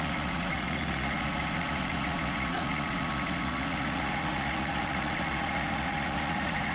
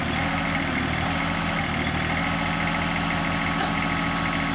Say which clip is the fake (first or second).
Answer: first